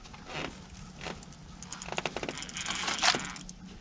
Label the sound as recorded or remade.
recorded